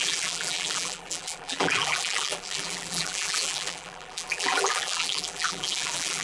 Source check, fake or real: fake